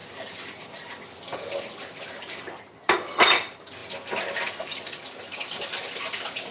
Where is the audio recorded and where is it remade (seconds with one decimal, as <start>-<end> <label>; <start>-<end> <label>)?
0.0-6.5 recorded